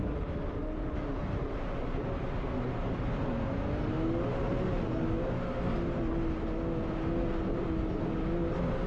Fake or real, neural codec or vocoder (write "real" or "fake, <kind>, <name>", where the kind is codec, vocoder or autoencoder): real